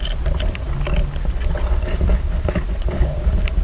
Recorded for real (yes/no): yes